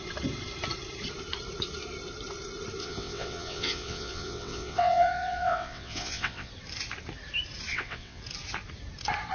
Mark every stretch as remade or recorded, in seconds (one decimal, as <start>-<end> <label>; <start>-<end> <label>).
0.0-2.8 recorded; 2.8-6.5 remade; 6.5-7.7 recorded; 7.7-8.2 remade; 8.2-9.3 recorded